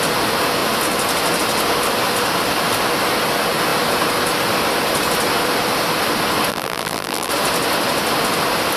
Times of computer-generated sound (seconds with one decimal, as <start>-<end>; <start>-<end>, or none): 6.5-7.3

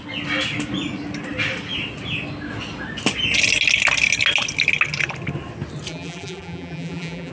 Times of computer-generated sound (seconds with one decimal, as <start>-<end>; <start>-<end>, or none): 5.9-7.3

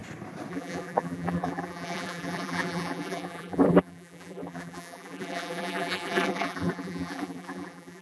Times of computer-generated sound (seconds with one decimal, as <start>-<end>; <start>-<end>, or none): 0.5-8.0

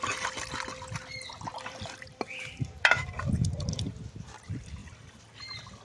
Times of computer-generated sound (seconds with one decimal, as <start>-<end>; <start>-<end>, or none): 1.5-3.9

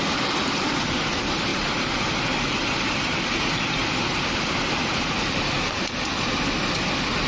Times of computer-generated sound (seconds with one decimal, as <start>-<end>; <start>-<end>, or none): 0.0-1.5; 2.9-7.3

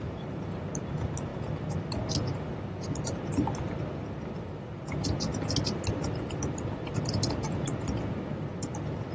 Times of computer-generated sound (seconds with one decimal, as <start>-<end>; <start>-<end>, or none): 5.3-9.1

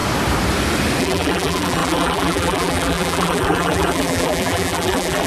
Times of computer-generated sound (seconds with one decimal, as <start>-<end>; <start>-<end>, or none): 1.0-5.3

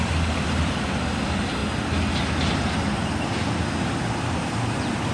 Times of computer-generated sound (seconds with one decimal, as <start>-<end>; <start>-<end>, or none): 0.0-1.6; 4.0-5.1